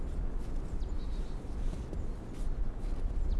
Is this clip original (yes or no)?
yes